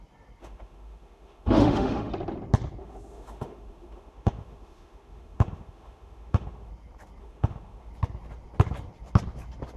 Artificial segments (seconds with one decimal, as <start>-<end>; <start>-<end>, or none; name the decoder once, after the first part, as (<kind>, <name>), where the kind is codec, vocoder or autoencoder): 0.4-2.1 (autoencoder, DAC-VAE); 2.8-6.7; 7.2-7.9